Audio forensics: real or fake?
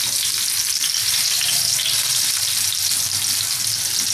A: real